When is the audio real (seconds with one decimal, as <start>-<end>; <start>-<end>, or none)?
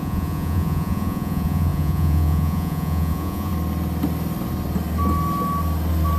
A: 3.5-6.2